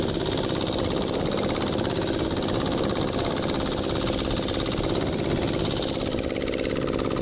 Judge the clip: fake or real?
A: real